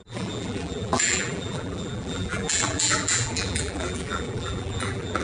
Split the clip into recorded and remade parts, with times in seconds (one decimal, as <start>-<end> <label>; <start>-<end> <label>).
0.0-5.2 remade